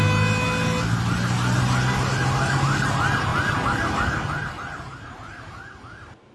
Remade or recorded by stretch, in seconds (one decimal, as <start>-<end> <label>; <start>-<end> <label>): 0.0-6.3 recorded